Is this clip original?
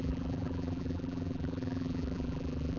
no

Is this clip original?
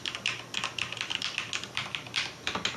yes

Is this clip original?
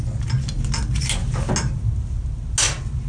yes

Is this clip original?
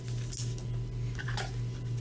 yes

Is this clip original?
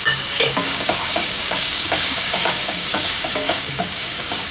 no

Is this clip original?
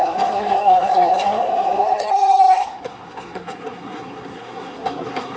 no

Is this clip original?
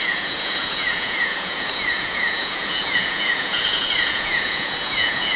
no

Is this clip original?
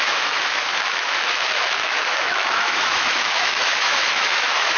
no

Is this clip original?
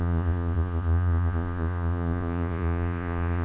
no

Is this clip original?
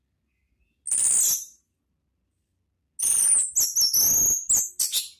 yes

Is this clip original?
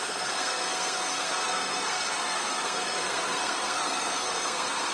no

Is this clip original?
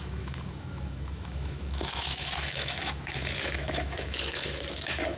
no